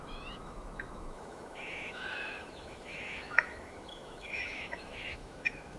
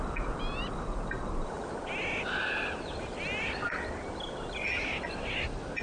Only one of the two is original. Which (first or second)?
second